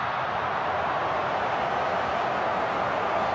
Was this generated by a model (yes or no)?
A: no